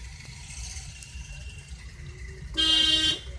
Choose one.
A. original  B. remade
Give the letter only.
A